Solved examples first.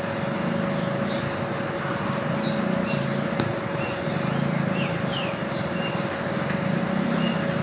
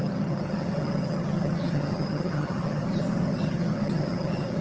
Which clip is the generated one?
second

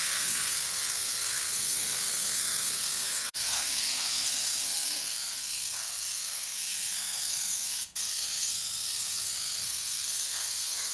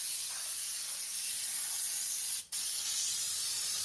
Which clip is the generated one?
first